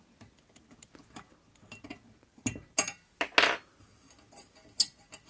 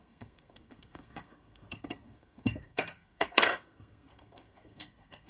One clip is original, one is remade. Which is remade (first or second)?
second